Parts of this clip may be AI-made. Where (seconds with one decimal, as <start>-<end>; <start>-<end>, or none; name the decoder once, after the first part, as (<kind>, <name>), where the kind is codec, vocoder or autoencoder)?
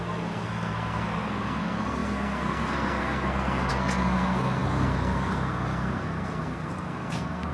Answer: 0.0-7.5 (codec, SNAC)